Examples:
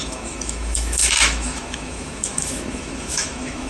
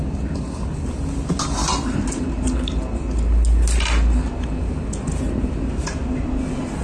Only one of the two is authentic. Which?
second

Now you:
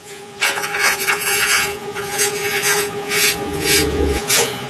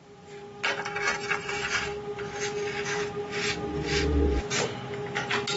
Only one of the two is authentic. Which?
second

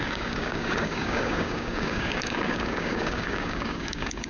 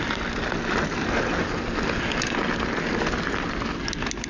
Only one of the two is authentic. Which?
second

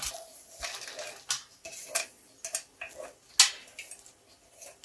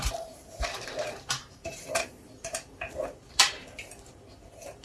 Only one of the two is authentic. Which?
first